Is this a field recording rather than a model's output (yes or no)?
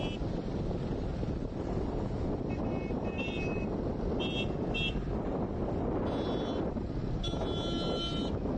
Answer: yes